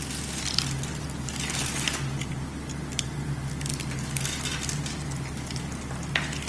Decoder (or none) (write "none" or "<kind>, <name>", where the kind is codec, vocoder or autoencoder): none